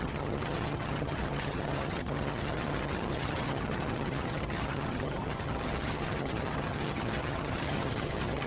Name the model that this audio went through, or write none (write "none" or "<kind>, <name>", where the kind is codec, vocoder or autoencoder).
vocoder, HiFi-GAN